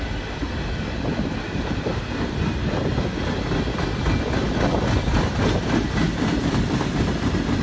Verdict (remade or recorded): recorded